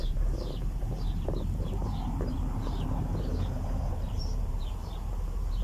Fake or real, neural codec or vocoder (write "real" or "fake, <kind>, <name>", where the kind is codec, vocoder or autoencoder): fake, vocoder, BigVGAN v2